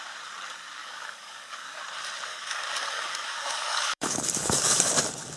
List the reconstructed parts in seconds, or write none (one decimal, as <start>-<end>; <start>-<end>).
0.8-1.8; 2.3-5.0

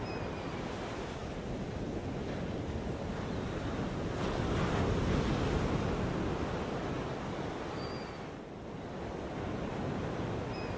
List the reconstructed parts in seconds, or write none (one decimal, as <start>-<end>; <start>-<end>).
none

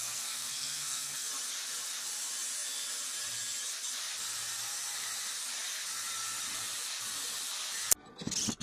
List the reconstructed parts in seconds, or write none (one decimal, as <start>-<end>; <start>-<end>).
0.0-1.3

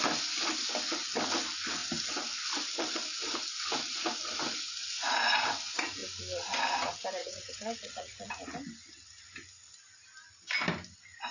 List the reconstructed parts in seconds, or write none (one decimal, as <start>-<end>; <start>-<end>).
7.2-8.3

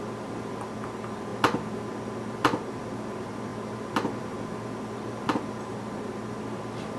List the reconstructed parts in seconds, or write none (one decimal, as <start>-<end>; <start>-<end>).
none

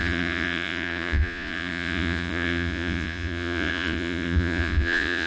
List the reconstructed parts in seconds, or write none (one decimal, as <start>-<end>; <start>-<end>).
0.0-5.3

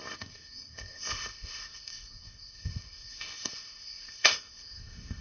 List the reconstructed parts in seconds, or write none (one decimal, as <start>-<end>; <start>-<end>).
0.0-5.2

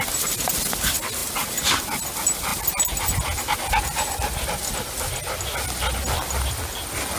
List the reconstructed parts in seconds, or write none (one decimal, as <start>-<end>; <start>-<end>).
none